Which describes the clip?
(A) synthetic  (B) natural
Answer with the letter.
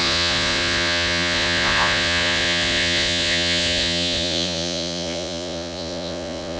A